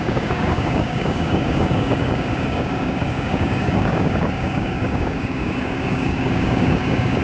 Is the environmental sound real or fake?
fake